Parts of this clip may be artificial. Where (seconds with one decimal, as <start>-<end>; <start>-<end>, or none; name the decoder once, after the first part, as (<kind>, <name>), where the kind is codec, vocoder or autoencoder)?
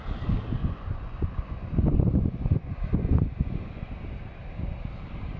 0.6-3.8 (vocoder, Vocos)